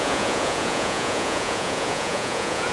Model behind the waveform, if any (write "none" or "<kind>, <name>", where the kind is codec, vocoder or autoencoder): vocoder, Vocos